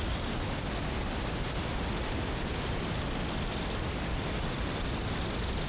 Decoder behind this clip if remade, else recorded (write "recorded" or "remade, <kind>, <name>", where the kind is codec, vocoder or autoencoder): recorded